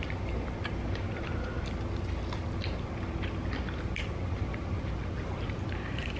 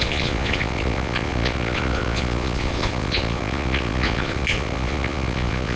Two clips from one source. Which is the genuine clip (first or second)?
first